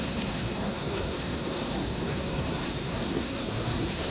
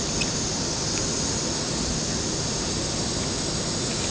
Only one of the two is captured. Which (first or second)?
second